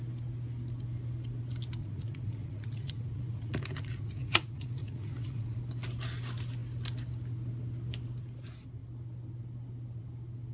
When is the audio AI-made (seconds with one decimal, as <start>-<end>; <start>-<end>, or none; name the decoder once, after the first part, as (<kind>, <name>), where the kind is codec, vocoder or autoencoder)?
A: 1.8-5.6 (vocoder, Vocos)